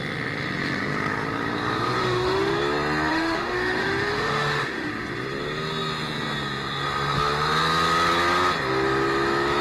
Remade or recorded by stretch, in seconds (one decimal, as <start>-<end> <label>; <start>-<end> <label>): 0.0-2.0 recorded; 2.0-2.6 remade; 2.6-3.1 recorded; 3.1-4.9 remade; 4.9-9.6 recorded